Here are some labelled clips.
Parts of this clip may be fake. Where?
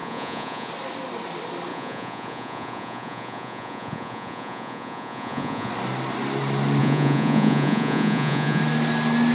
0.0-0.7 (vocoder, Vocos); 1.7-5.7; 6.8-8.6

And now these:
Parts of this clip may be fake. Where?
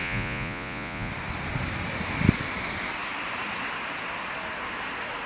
0.0-1.1 (vocoder, Vocos)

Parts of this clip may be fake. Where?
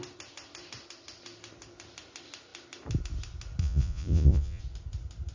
3.6-4.6 (vocoder, Vocos)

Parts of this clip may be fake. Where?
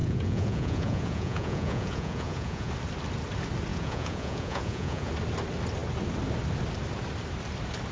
0.0-2.7 (vocoder, Vocos); 3.7-5.1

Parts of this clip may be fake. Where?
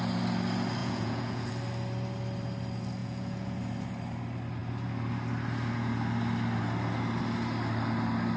0.8-1.5 (vocoder, Vocos); 3.0-3.6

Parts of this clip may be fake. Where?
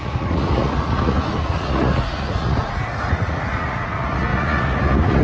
0.0-5.2 (vocoder, Vocos)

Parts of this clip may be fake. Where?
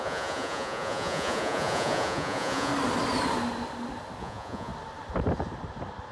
0.0-2.7 (vocoder, Vocos); 4.2-4.7